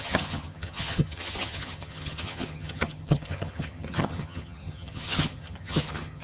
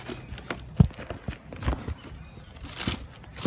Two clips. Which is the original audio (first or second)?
second